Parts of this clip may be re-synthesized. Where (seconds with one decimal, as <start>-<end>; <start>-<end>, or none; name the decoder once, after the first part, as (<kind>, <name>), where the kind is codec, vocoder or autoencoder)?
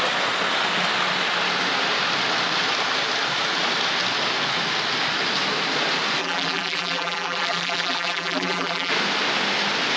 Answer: 6.2-8.9 (vocoder, BigVGAN v2)